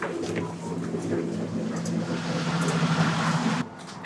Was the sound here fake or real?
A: real